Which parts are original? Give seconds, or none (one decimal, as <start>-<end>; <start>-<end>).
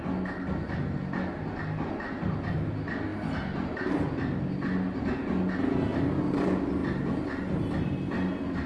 0.0-8.7